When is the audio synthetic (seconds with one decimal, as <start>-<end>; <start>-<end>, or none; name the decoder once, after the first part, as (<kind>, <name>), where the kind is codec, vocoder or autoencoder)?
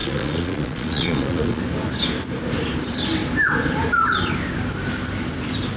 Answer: 0.0-1.6 (vocoder, Vocos)